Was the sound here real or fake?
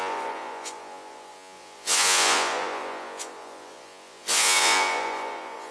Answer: fake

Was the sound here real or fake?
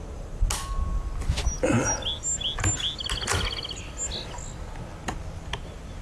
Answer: real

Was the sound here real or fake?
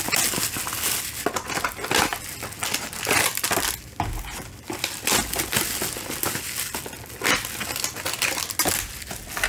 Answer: real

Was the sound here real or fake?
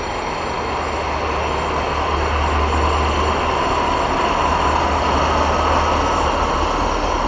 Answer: real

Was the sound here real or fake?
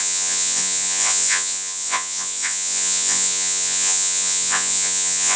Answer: fake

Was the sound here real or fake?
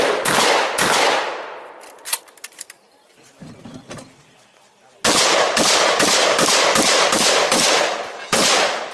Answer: real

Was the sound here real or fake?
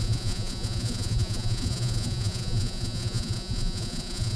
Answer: fake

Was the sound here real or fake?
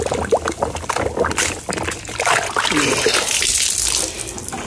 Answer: real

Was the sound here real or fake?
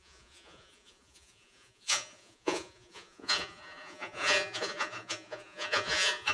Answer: fake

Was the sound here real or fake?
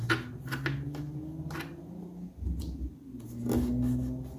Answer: real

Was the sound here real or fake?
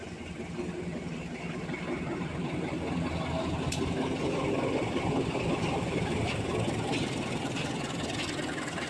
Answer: real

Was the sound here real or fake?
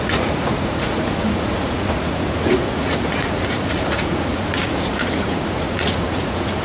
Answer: fake